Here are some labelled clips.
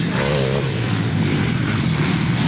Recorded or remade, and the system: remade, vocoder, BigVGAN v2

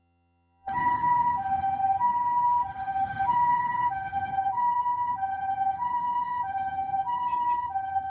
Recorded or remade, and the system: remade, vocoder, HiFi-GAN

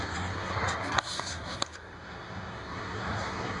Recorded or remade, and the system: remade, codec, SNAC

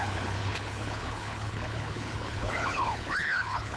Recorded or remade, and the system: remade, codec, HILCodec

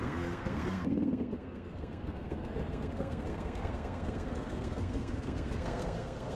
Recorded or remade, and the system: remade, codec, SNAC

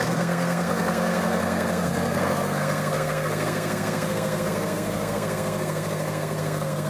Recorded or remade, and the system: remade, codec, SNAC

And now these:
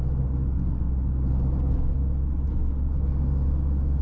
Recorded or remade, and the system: recorded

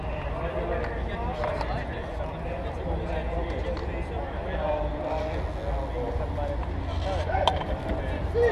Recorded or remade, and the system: recorded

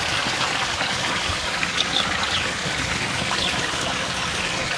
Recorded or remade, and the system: remade, codec, DAC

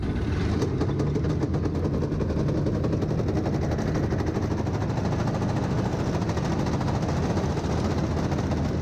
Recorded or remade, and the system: recorded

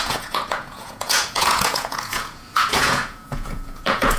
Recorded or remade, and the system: remade, vocoder, Vocos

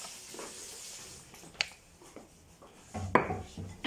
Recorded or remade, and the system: recorded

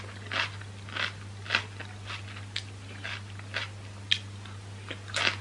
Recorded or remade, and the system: recorded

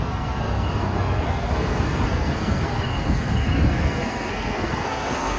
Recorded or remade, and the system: remade, codec, SNAC